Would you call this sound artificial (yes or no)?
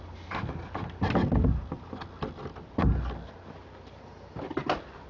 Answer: no